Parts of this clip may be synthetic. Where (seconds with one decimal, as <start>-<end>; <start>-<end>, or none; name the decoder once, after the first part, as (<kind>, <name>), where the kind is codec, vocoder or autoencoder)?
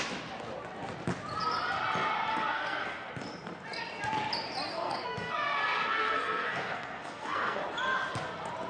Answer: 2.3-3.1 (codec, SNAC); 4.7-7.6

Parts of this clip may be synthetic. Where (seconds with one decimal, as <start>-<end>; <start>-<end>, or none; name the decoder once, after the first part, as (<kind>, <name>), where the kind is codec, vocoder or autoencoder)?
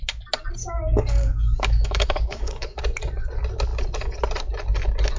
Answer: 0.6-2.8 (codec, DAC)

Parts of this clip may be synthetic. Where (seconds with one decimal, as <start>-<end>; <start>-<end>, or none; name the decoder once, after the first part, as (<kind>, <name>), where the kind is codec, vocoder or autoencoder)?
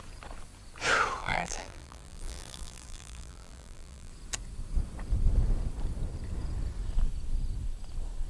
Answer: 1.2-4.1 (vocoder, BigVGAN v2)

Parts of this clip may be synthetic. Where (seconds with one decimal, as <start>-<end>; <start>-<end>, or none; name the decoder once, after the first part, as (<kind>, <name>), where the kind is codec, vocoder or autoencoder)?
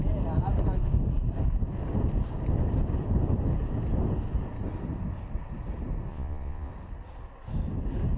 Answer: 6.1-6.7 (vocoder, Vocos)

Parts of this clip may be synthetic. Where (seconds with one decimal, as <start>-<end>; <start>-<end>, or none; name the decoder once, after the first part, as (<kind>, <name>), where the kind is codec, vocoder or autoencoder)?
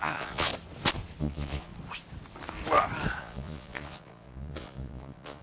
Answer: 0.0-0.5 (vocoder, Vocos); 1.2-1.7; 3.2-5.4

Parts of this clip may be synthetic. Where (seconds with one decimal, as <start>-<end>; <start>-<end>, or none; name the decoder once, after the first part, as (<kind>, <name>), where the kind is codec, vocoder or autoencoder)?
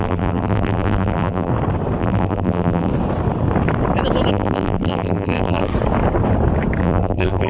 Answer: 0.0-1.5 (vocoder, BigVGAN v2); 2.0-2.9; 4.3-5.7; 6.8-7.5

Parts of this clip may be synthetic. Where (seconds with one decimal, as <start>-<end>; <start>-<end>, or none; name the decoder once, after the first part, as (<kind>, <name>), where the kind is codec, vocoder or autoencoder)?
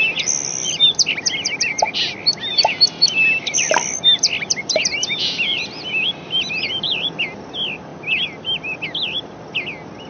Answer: 0.6-2.1 (vocoder, BigVGAN v2); 2.5-7.1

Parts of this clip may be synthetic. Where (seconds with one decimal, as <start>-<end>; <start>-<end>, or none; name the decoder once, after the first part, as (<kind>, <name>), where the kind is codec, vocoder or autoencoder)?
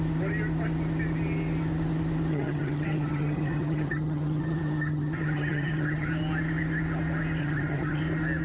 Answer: 2.3-6.1 (vocoder, HiFi-GAN); 7.4-8.0